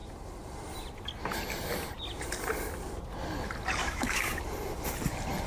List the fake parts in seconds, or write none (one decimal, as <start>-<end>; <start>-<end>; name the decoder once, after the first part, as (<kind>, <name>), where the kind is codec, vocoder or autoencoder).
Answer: 3.8-4.4 (autoencoder, DAC-VAE)